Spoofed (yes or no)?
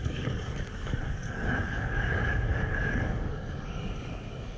yes